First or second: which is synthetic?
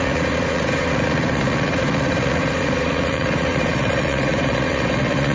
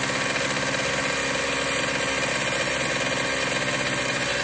first